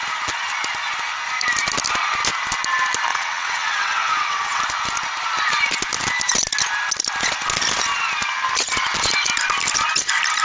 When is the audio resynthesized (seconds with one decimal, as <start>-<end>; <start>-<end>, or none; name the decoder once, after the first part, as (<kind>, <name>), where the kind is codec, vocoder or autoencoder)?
3.1-4.6 (vocoder, WaveNeXt)